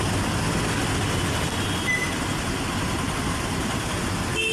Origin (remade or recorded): recorded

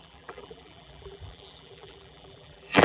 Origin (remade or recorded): remade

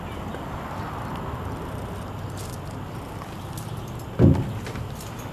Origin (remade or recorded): remade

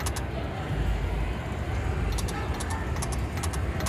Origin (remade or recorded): recorded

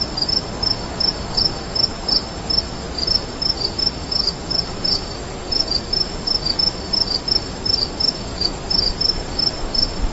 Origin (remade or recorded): recorded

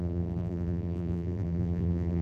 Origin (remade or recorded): remade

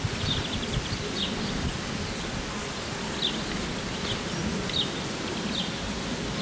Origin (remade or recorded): recorded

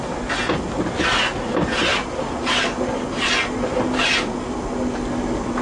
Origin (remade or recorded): recorded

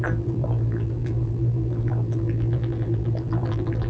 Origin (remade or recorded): remade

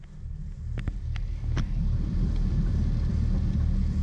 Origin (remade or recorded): recorded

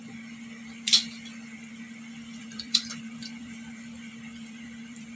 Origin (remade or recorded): remade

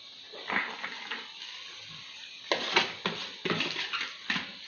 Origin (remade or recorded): recorded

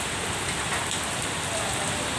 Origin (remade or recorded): recorded